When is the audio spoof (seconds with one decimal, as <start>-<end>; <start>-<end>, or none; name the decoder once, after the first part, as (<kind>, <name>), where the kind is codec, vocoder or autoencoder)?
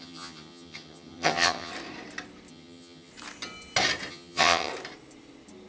0.0-1.7 (vocoder, HiFi-GAN); 2.5-3.1; 4.1-4.7